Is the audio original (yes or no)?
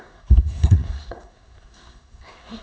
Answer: no